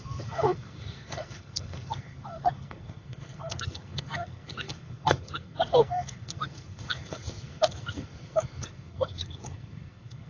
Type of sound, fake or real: fake